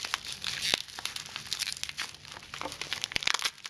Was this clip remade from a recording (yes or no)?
no